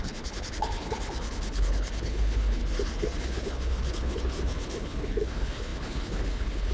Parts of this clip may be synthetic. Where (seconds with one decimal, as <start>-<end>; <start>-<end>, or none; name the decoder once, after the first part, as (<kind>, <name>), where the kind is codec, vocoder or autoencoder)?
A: 0.0-2.6 (codec, HILCodec); 3.2-6.7